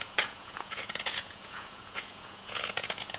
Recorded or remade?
remade